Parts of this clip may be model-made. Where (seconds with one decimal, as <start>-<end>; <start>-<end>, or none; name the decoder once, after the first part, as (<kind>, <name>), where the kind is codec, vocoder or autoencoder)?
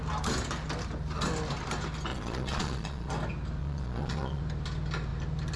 2.1-3.1 (vocoder, Vocos); 3.6-4.4